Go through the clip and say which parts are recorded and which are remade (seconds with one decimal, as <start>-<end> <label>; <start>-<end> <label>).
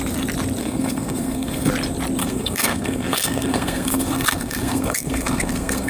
0.0-0.6 recorded; 0.6-1.7 remade; 1.7-2.2 recorded; 2.2-5.9 remade